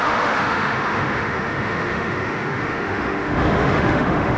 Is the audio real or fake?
fake